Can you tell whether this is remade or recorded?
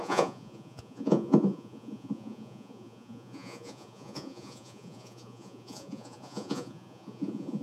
remade